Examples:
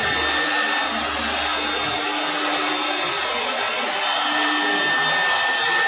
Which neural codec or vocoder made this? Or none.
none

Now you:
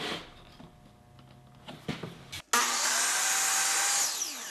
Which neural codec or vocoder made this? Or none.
none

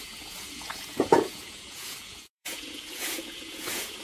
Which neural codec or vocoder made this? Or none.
vocoder, Vocos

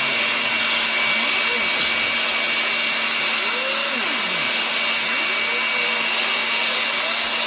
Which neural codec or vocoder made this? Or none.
none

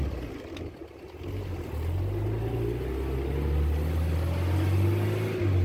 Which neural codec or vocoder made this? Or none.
none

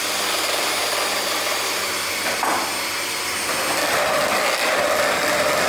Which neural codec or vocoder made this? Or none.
none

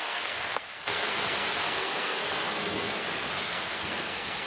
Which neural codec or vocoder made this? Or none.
codec, SNAC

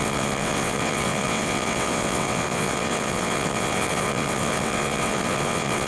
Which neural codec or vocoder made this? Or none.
vocoder, WaveNeXt